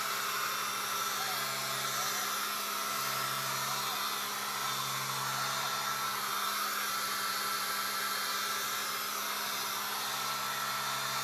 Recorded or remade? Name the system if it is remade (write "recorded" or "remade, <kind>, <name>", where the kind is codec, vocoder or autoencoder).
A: recorded